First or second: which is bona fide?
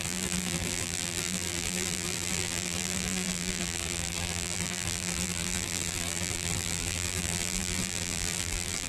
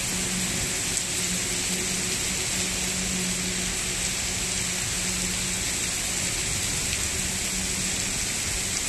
second